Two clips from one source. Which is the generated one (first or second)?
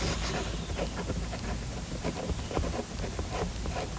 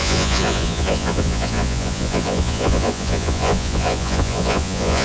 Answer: second